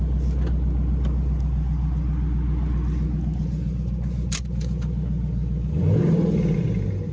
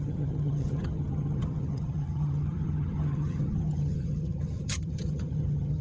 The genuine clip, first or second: first